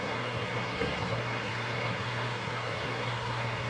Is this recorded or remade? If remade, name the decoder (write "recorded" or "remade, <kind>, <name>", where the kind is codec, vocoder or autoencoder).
remade, codec, SNAC